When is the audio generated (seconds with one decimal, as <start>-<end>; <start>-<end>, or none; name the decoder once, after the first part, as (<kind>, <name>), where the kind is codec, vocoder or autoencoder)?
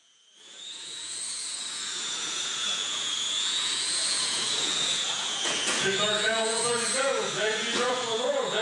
0.0-8.6 (vocoder, Vocos)